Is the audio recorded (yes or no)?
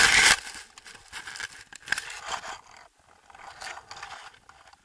yes